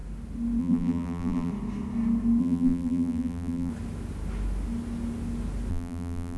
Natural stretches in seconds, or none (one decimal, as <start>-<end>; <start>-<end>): 0.0-0.6; 1.5-2.4; 3.7-5.7